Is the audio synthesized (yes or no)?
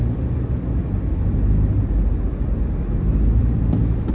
yes